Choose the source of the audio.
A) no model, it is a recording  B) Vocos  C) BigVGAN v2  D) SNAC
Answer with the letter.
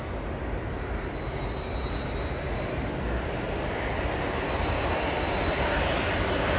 A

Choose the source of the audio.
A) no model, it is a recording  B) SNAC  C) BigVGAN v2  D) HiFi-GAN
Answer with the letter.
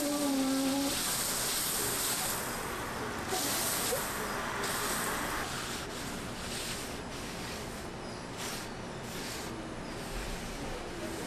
A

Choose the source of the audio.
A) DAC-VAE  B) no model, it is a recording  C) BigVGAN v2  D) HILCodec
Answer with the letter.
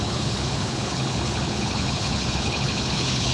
D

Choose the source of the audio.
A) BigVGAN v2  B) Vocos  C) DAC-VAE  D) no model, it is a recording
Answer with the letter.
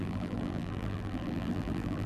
A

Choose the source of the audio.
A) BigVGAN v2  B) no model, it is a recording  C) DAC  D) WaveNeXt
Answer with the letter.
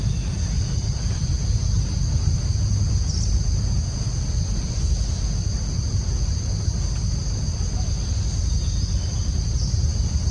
B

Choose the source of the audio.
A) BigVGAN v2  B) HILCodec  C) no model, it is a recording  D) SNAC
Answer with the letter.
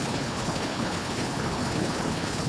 B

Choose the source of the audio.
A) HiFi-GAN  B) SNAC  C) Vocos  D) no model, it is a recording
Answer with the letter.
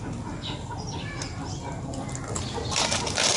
D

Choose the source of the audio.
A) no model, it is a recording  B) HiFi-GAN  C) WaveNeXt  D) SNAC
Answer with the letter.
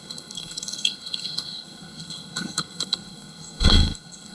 D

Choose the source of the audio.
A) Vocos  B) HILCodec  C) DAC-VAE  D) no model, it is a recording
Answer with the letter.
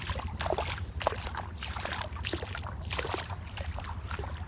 D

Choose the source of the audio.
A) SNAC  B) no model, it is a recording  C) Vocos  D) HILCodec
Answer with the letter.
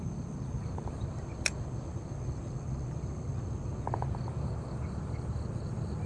B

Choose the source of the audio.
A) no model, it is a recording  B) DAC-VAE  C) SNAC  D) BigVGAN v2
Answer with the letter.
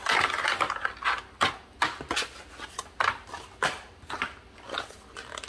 A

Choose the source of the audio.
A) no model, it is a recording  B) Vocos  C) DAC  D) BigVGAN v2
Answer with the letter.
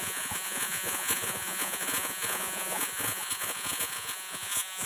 B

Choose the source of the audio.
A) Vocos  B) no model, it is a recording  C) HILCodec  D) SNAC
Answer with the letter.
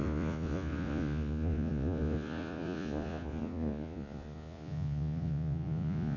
A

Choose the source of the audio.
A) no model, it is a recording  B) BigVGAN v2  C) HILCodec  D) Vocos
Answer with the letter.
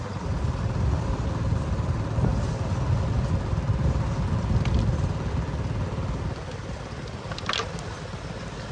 A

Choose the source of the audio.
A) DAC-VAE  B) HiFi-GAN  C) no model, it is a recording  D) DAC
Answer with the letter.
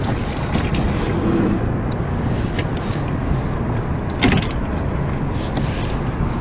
C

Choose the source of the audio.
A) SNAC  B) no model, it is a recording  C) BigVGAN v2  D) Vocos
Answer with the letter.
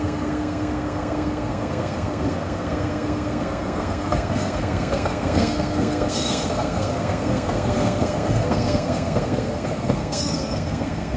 A